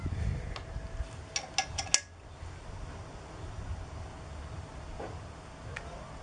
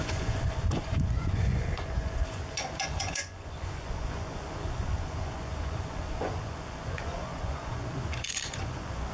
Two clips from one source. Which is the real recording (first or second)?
first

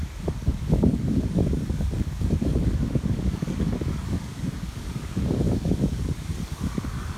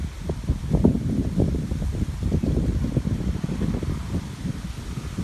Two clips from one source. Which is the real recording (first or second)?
second